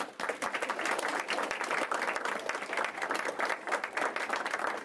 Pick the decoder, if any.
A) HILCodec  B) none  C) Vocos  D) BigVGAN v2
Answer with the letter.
B